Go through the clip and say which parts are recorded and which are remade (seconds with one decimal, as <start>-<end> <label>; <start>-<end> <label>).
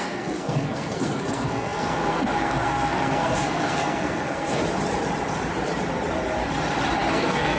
0.0-4.6 remade; 4.6-7.1 recorded; 7.1-7.6 remade